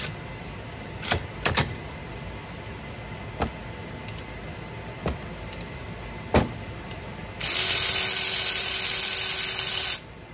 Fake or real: real